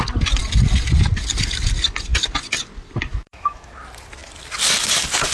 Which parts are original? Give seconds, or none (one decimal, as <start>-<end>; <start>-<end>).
0.0-3.1; 3.7-5.3